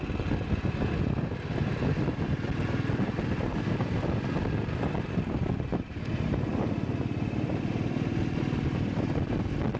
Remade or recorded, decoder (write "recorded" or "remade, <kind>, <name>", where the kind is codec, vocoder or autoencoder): recorded